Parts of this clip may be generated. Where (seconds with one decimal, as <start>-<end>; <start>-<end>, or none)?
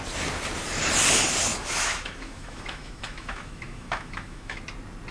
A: 1.5-4.6